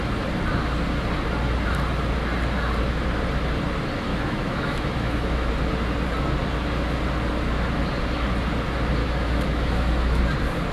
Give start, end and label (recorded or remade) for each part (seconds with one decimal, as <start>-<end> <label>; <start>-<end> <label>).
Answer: 0.0-4.1 recorded; 4.1-5.5 remade; 5.5-9.0 recorded; 9.0-10.2 remade; 10.2-10.7 recorded